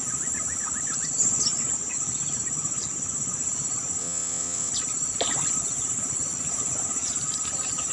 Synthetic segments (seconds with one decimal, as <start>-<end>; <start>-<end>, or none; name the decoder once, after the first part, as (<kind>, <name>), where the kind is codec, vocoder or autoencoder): 4.0-4.7 (vocoder, WaveNeXt)